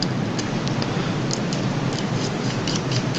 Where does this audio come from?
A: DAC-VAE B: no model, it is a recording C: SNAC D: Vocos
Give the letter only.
B